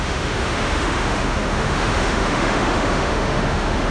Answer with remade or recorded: remade